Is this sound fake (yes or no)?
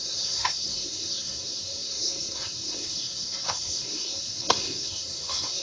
yes